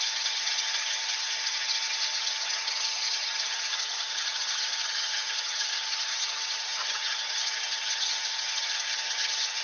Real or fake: fake